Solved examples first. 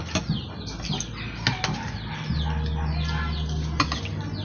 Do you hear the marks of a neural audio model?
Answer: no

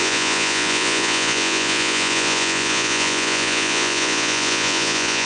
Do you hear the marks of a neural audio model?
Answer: yes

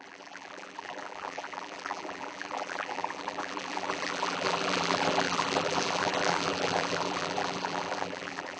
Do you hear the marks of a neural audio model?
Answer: yes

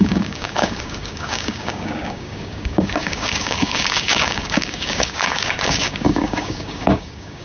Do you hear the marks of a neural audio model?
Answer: yes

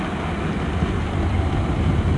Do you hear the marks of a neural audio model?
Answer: no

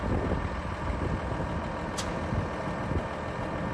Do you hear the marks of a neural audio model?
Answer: no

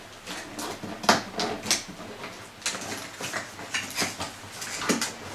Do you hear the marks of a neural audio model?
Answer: no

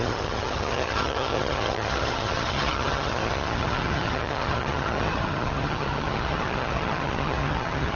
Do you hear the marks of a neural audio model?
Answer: yes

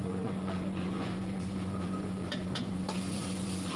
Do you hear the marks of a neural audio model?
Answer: yes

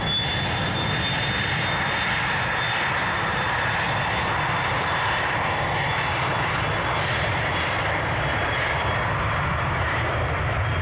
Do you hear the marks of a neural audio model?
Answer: no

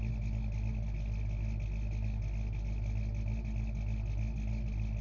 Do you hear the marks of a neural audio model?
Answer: no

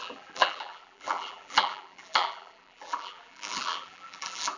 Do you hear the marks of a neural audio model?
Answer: yes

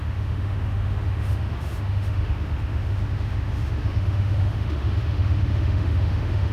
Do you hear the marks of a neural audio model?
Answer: yes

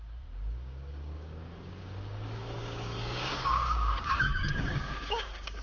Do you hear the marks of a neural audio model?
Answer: yes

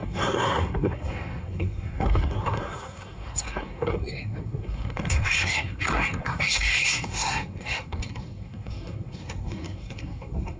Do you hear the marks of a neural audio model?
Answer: yes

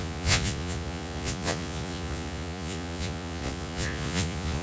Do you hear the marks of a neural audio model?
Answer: yes